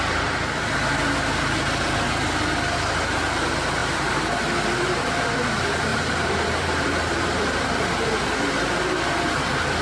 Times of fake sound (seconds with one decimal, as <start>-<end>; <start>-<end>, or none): 3.8-4.3; 5.9-7.9